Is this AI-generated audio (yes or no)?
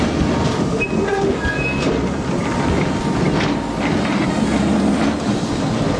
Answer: no